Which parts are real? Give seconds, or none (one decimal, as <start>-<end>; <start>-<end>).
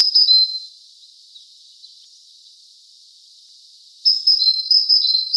0.0-4.4